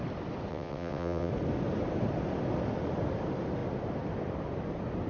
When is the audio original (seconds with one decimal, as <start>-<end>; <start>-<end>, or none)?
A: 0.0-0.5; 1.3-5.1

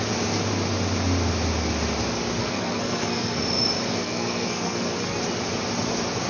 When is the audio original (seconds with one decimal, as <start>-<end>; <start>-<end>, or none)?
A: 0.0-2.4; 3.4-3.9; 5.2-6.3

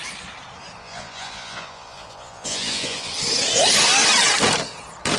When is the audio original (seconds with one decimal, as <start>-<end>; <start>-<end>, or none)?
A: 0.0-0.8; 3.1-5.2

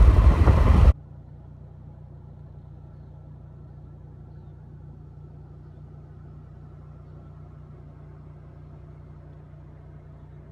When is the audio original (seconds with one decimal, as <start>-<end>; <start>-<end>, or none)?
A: 0.0-10.5

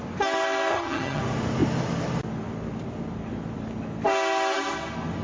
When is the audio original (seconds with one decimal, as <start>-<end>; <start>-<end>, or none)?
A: 0.0-0.7; 1.2-5.2

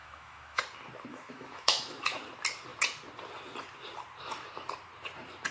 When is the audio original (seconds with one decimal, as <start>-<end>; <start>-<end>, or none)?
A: 0.6-1.1; 2.2-5.5

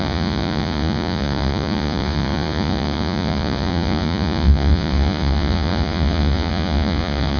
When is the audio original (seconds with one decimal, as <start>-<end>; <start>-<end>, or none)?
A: none